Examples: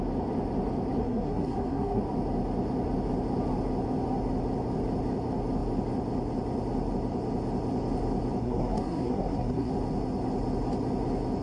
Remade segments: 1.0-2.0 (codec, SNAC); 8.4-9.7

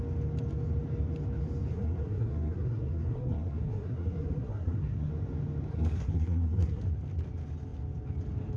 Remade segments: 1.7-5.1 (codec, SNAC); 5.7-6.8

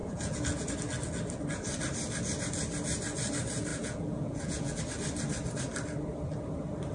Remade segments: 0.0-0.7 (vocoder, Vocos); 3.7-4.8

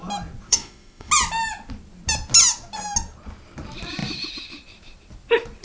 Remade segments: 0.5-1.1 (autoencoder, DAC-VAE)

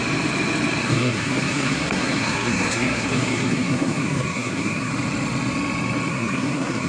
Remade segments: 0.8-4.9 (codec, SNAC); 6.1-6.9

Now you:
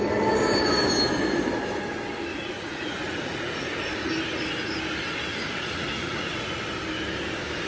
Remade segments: 2.3-4.1 (vocoder, Vocos); 5.3-6.5